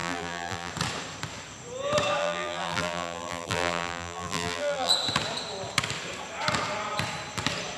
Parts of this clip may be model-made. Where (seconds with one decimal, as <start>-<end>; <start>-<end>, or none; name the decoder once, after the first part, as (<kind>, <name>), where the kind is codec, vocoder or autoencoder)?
0.0-0.7 (vocoder, BigVGAN v2); 2.2-4.9